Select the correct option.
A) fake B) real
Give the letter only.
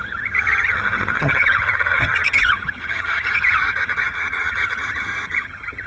A